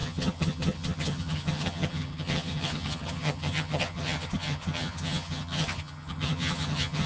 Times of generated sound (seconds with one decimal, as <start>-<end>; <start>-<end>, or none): 0.0-7.1